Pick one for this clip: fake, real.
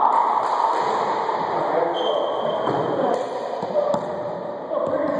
real